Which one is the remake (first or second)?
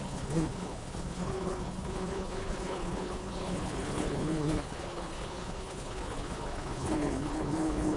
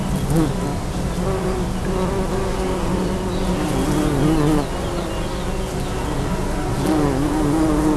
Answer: first